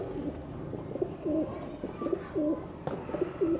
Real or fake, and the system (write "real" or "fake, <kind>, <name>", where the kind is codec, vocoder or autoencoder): real